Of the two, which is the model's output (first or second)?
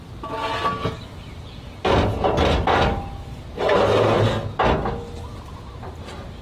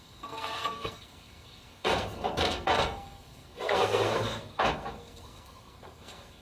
second